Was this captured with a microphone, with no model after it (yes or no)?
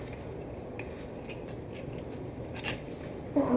no